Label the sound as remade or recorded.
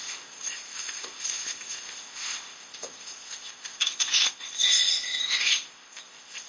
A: remade